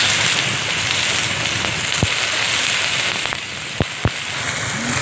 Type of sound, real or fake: real